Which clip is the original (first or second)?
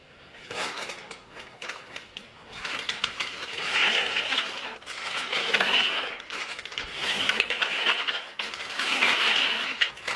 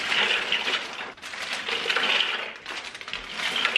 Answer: second